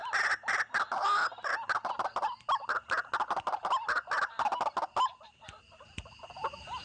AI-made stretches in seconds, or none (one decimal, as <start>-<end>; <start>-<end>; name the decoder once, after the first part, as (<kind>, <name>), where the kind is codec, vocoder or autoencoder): none